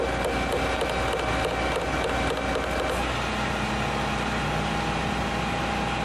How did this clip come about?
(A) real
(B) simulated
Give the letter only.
A